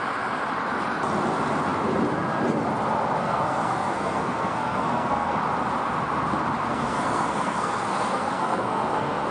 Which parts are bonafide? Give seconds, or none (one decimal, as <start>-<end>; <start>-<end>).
0.0-3.2; 5.4-6.7